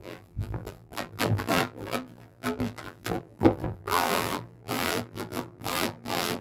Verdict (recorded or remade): remade